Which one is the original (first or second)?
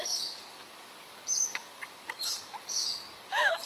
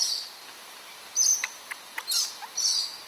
second